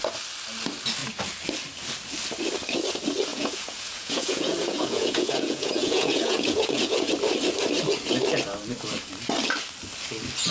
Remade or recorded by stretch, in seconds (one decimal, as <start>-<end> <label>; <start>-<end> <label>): 0.0-3.3 recorded; 3.3-7.1 remade; 7.1-10.5 recorded